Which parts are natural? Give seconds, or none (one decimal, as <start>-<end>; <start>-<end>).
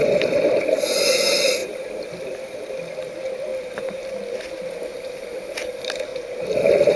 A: 0.0-3.5; 4.1-6.1